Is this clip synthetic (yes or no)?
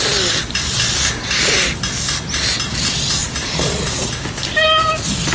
no